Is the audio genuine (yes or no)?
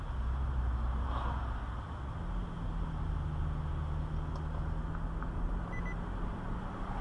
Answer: yes